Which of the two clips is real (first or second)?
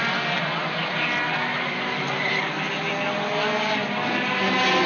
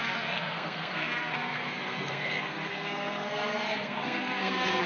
first